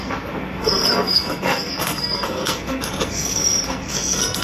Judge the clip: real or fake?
fake